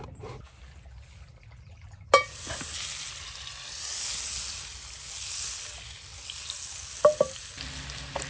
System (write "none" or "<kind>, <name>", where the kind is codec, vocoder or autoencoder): none